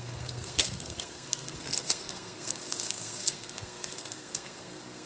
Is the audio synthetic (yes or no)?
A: yes